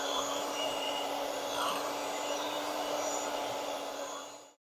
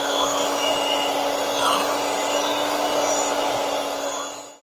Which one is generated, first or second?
first